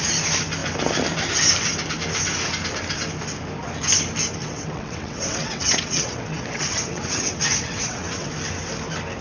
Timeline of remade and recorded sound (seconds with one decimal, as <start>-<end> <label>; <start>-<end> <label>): 0.0-4.4 recorded; 4.4-8.3 remade; 8.3-9.2 recorded